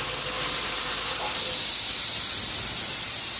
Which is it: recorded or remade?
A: recorded